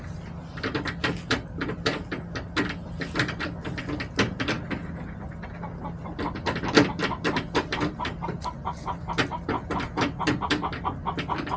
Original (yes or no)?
yes